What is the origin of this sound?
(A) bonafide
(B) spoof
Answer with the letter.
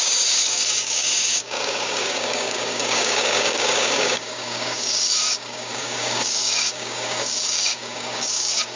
B